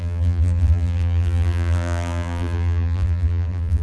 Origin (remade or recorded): remade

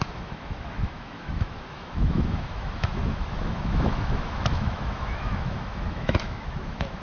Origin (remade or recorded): remade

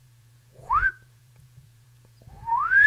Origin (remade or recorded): remade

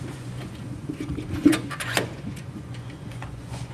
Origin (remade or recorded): remade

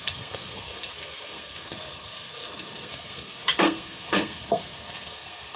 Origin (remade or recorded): remade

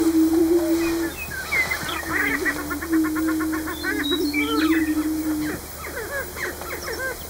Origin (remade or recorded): recorded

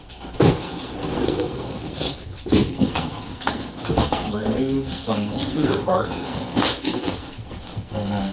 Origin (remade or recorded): remade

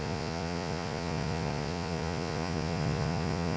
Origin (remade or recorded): remade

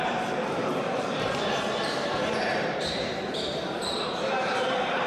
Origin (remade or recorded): remade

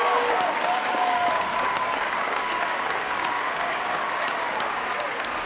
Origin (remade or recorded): remade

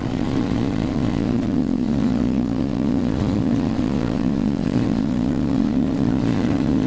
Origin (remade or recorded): remade